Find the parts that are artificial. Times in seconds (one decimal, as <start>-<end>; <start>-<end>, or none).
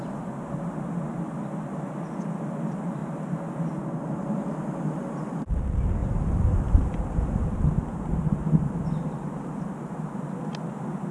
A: 6.0-10.4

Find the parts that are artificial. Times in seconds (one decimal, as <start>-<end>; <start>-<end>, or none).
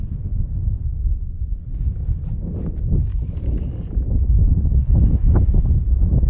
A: none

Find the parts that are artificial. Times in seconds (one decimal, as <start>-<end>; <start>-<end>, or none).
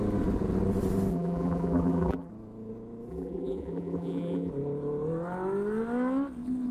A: 1.1-2.3; 3.1-4.5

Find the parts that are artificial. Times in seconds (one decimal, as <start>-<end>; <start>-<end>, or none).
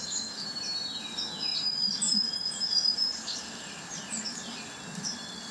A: 1.5-4.8